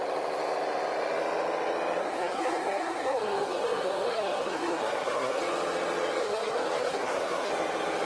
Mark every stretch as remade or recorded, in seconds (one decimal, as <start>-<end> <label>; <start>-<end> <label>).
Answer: 0.0-2.0 recorded; 2.0-5.4 remade; 5.4-6.2 recorded; 6.2-7.5 remade; 7.5-8.0 recorded